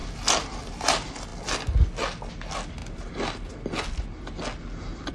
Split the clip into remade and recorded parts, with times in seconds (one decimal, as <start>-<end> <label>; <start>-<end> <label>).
0.0-5.1 recorded